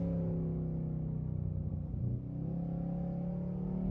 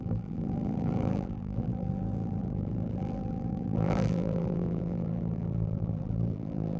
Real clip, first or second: first